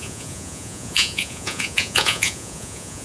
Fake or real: fake